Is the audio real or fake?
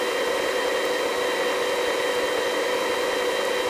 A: real